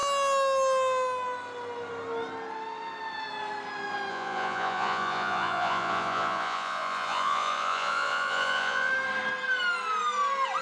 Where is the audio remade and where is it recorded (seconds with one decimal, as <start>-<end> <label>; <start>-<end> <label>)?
0.0-4.1 recorded; 4.1-8.9 remade; 8.9-10.6 recorded